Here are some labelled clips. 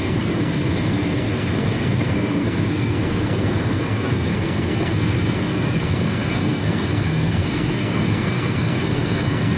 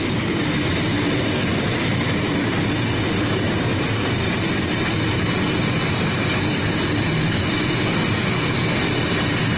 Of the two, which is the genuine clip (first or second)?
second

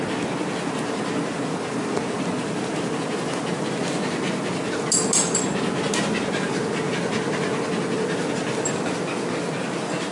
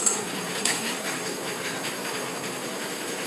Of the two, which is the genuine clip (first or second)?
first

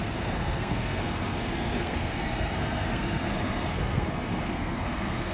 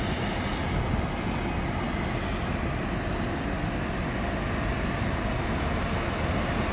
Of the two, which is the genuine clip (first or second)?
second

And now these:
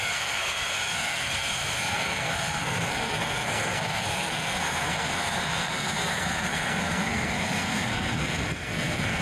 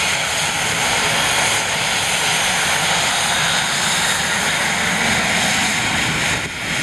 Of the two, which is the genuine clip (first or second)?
second